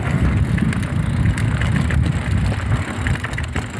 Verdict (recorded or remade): recorded